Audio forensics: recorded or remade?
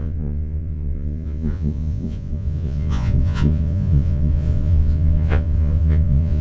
remade